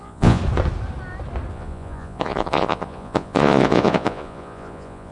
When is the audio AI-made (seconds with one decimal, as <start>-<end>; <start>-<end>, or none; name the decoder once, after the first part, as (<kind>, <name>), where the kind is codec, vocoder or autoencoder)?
0.0-0.4 (vocoder, Vocos); 1.5-5.1